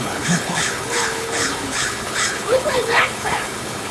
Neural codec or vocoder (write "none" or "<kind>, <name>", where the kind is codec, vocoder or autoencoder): codec, HILCodec